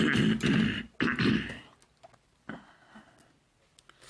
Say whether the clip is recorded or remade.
recorded